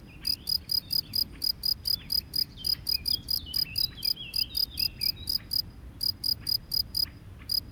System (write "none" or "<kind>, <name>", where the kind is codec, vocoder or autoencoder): none